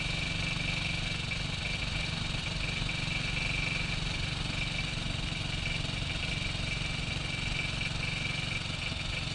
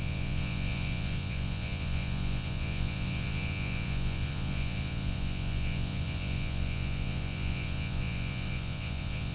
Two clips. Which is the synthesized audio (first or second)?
second